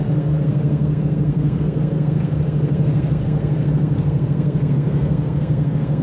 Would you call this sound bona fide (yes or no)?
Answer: no